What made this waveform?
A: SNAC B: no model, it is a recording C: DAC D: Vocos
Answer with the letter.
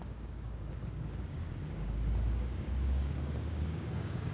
C